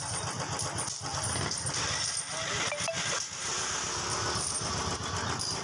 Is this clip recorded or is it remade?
recorded